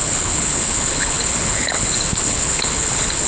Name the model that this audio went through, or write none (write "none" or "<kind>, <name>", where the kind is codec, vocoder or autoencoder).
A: codec, HILCodec